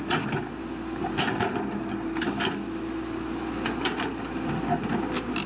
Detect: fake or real real